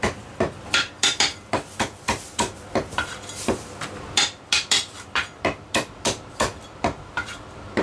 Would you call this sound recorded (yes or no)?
no